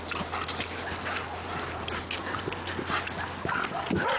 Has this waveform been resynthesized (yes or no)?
no